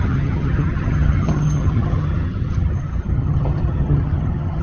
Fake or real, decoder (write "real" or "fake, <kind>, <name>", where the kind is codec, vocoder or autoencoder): fake, vocoder, HiFi-GAN